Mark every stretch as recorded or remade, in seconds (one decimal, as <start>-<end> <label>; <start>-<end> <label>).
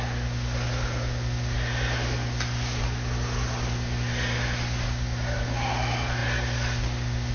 0.0-7.3 recorded